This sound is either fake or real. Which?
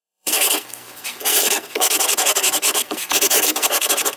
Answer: fake